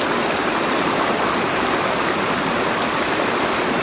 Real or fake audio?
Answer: real